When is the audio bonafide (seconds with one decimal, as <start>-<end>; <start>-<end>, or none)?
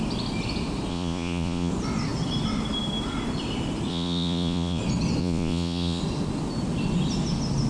0.0-0.9; 1.7-3.9; 4.8-5.2; 6.0-7.7